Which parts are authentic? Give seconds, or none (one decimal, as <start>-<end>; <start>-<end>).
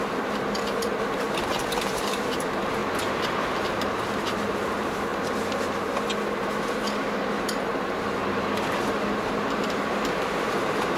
2.8-3.4; 5.1-6.5; 8.2-9.5